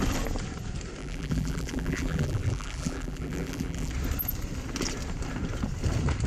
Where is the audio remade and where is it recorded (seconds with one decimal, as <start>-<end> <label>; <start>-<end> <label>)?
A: 0.0-1.0 recorded; 1.0-3.9 remade; 3.9-6.3 recorded